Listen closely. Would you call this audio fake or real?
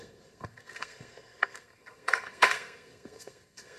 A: fake